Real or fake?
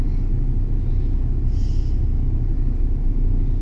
real